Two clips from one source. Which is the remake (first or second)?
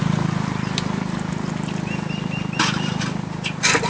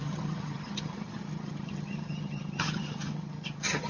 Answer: second